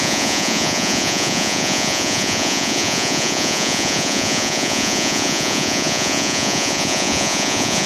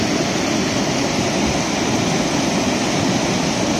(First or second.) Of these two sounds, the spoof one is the first